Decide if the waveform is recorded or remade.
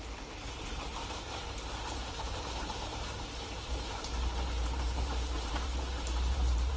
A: remade